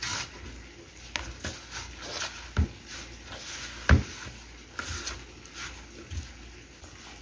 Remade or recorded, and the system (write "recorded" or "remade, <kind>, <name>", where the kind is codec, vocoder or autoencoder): recorded